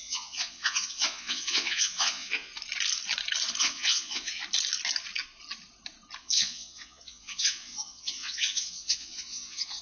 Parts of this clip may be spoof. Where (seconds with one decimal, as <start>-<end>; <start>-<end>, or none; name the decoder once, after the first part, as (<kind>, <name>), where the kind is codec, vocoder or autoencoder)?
0.0-2.5 (vocoder, Vocos); 3.6-4.4; 6.2-9.8